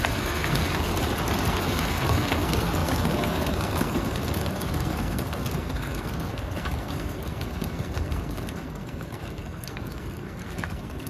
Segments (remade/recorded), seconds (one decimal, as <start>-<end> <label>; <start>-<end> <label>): 0.0-0.9 remade; 0.9-1.5 recorded; 1.5-11.1 remade